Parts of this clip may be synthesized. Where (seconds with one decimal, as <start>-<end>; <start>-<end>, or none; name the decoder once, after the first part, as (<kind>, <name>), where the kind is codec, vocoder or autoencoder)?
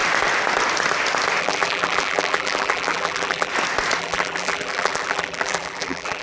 1.4-3.5 (vocoder, BigVGAN v2); 4.0-6.2